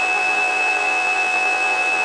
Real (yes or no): no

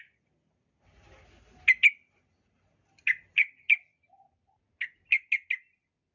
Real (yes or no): yes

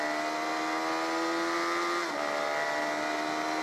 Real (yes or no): yes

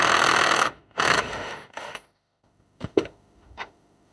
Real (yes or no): no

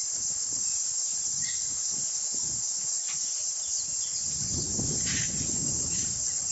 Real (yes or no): yes